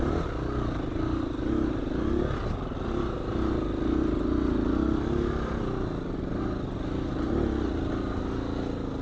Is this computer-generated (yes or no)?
no